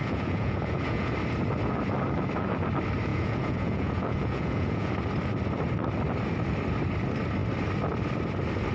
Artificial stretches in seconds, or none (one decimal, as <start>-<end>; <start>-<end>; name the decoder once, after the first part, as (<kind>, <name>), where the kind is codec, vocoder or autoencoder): 0.0-1.1 (vocoder, Vocos); 3.1-4.9